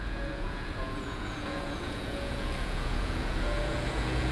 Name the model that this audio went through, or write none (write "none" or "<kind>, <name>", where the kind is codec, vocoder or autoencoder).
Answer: vocoder, Vocos